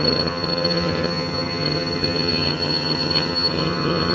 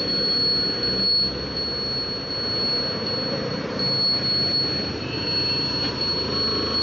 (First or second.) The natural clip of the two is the second